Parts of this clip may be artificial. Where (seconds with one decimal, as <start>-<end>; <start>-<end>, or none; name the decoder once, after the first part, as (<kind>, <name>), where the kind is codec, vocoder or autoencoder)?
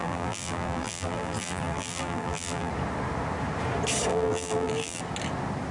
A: 0.0-2.7 (vocoder, BigVGAN v2); 4.1-5.0